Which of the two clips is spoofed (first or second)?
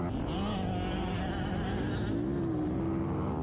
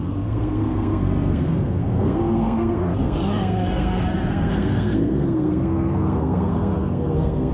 second